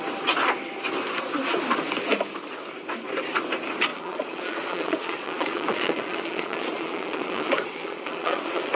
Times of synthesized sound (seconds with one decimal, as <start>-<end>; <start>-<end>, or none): 3.9-8.7